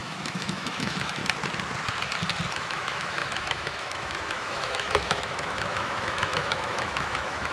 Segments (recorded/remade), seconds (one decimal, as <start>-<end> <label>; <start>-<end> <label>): 0.0-1.2 remade; 1.2-2.5 recorded; 2.5-7.5 remade